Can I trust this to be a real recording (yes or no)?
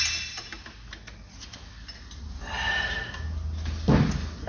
yes